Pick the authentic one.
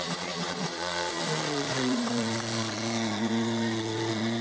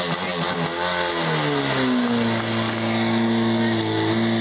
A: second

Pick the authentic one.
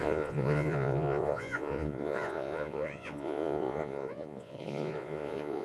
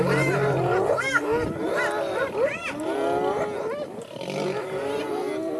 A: second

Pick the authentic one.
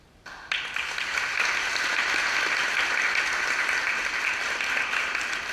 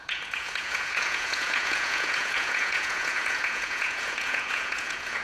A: first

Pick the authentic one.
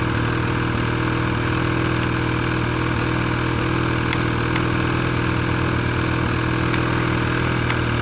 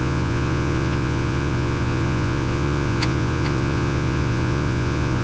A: first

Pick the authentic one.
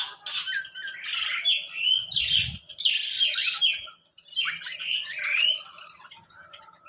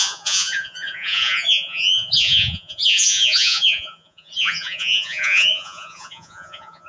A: first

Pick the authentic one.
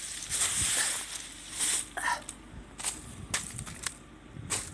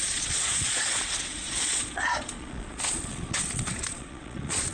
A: first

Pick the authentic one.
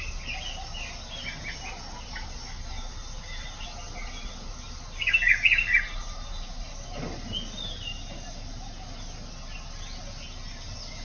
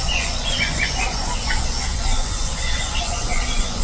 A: first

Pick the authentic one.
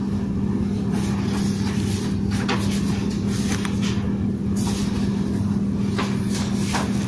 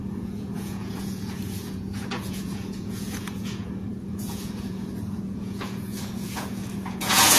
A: first